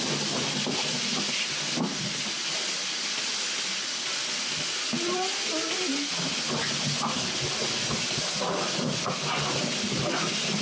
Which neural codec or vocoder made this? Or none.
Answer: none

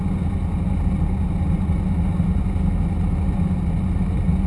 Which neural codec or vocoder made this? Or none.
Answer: none